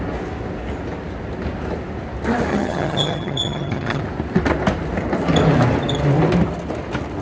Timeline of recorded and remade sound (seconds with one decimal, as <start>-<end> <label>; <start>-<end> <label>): 0.0-2.5 recorded; 2.5-4.0 remade; 4.0-7.2 recorded